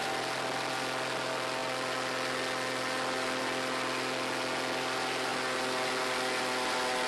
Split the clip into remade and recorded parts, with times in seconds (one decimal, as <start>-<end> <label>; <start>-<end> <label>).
0.0-7.1 recorded